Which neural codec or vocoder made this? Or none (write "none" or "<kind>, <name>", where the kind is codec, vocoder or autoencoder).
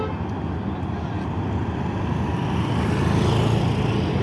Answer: none